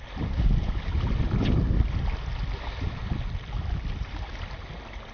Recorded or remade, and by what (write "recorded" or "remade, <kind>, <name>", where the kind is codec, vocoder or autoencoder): recorded